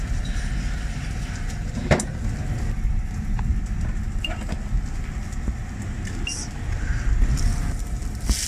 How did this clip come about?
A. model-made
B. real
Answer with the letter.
B